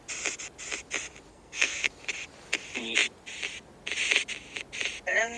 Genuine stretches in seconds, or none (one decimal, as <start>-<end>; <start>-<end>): 0.0-1.3; 1.9-5.4